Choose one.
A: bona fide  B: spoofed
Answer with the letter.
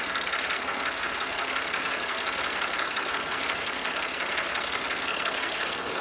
B